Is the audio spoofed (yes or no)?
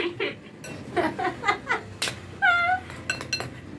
no